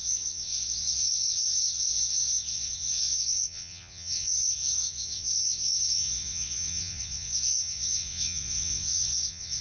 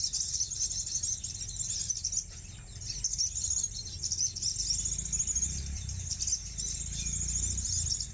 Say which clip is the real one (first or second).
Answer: second